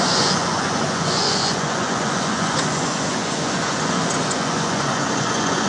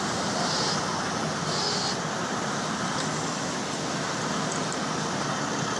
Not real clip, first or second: first